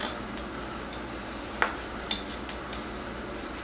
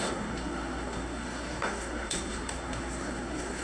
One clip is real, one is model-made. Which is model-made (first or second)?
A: second